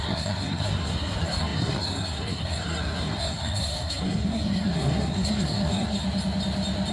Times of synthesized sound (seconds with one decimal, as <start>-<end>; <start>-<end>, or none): 0.0-6.0